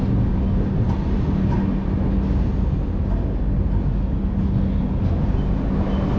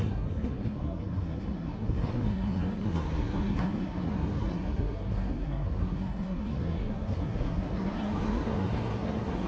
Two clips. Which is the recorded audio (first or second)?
first